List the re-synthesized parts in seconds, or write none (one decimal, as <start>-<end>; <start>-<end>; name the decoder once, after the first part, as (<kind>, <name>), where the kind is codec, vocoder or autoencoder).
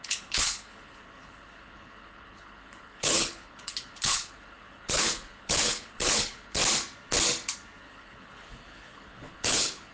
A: 0.0-6.6 (codec, HILCodec); 7.8-9.9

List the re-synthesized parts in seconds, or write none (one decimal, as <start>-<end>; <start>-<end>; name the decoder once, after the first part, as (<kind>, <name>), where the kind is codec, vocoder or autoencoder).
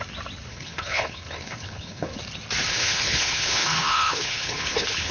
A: 0.5-2.2 (codec, HILCodec); 2.6-5.1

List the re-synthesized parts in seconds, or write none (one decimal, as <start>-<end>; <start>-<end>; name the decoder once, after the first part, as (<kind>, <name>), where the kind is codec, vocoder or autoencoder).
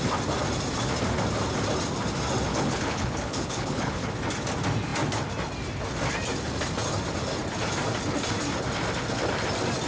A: 2.5-4.1 (codec, HILCodec)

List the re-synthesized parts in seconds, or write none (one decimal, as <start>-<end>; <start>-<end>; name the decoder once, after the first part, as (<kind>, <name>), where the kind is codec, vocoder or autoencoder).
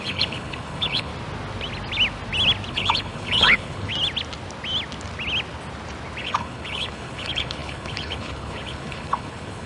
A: 0.0-1.1 (codec, HILCodec); 2.7-3.9; 6.2-9.7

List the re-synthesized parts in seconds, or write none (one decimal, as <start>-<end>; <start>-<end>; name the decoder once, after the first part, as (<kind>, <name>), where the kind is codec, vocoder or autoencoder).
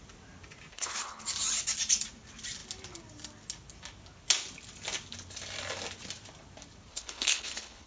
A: 0.7-1.2 (codec, HILCodec); 6.9-7.9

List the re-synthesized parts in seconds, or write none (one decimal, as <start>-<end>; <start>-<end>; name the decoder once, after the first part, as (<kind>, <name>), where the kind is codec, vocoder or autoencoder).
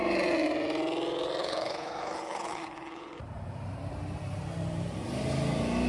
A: 1.4-3.2 (codec, HILCodec)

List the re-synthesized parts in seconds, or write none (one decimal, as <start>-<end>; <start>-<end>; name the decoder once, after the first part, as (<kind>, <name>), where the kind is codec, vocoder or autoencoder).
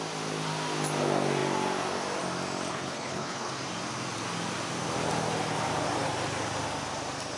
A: 2.7-3.5 (codec, HILCodec)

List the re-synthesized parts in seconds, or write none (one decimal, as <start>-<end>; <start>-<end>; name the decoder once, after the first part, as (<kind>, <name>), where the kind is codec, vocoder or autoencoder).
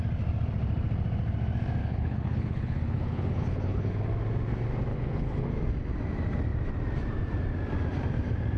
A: 1.8-4.1 (codec, HILCodec); 4.9-5.5